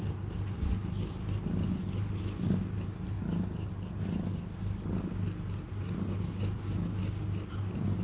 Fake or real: real